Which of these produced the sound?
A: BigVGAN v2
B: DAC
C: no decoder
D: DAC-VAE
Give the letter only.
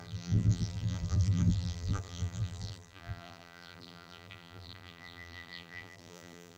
A